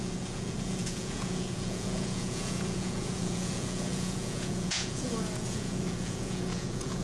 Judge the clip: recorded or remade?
remade